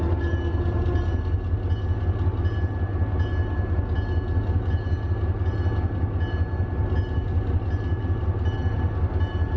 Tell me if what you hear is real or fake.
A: real